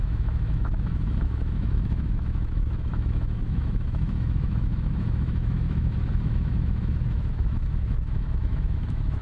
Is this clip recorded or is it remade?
remade